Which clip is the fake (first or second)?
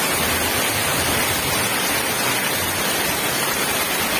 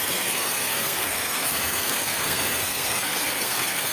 second